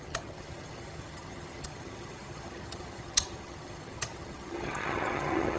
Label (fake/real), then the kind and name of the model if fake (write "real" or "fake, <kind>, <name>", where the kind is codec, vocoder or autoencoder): fake, vocoder, HiFi-GAN